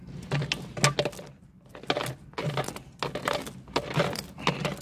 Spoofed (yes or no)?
no